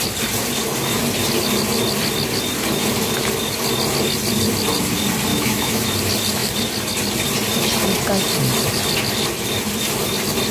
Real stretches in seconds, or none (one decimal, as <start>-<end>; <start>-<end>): 0.0-5.3; 5.8-10.5